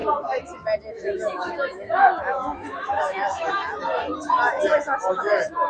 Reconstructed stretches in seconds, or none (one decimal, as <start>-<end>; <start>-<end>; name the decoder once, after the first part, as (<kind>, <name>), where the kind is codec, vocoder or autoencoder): 0.9-3.6 (autoencoder, DAC-VAE); 5.1-5.7